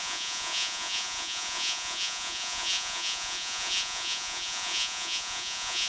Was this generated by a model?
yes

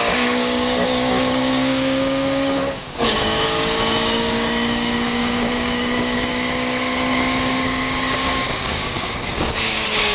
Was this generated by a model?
yes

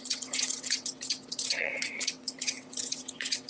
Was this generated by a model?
yes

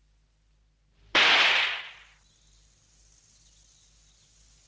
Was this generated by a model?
no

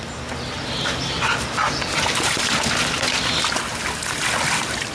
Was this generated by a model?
no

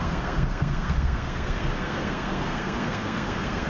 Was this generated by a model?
yes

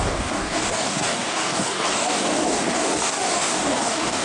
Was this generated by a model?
yes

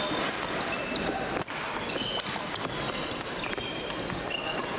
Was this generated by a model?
no